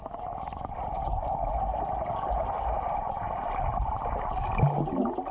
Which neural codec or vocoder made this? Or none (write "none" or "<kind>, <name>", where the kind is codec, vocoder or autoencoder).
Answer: none